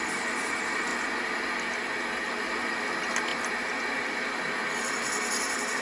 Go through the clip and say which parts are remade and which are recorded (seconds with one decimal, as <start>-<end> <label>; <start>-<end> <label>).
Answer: 0.0-5.8 recorded

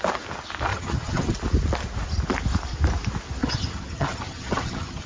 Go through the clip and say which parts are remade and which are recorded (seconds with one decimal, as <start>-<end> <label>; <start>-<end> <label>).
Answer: 0.0-0.7 recorded; 0.7-1.3 remade; 1.3-3.4 recorded; 3.4-5.1 remade

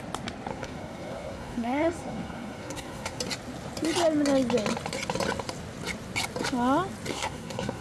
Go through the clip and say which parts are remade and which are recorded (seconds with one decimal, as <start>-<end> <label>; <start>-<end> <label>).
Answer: 0.0-0.5 recorded; 0.5-3.2 remade; 3.2-7.1 recorded; 7.1-7.8 remade

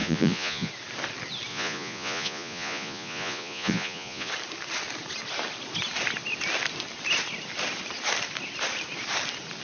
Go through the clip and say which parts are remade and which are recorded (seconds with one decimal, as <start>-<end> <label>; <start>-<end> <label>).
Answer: 0.0-0.7 remade; 0.7-1.5 recorded; 1.5-4.3 remade; 4.3-9.6 recorded

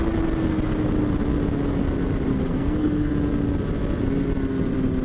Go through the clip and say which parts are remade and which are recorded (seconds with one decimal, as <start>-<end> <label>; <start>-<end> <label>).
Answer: 0.0-2.3 recorded; 2.3-3.1 remade; 3.1-5.0 recorded

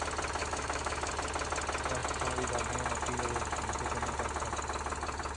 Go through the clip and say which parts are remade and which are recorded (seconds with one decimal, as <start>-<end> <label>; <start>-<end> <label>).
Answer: 0.0-0.4 recorded; 0.4-1.1 remade; 1.1-5.4 recorded

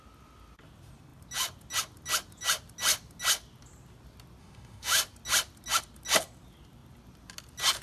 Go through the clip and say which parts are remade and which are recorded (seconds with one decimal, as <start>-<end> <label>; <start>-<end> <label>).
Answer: 0.0-4.4 recorded; 4.4-4.9 remade; 4.9-7.8 recorded